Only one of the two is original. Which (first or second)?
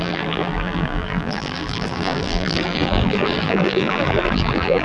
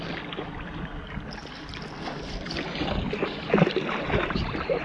second